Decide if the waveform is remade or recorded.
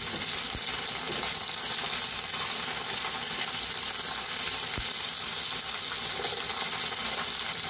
recorded